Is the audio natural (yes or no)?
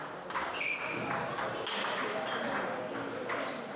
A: yes